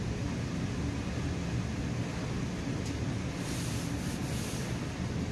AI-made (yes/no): no